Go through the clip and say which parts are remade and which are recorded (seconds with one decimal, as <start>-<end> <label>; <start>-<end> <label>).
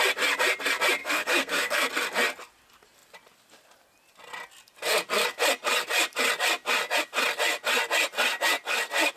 0.0-1.0 recorded; 1.0-1.9 remade; 1.9-9.2 recorded